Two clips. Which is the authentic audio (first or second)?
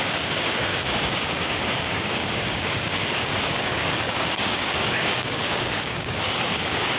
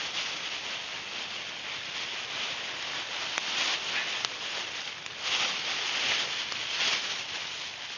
second